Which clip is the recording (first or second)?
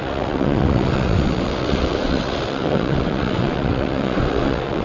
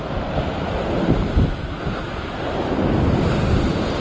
second